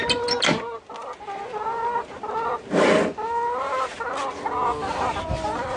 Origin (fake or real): real